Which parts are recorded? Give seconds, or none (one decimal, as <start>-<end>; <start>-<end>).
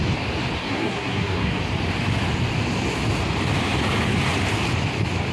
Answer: 0.0-0.6; 1.6-5.3